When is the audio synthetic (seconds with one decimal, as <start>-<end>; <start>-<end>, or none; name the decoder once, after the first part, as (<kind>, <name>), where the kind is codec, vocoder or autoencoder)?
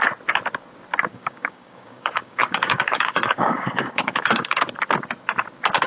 1.1-4.6 (codec, DAC)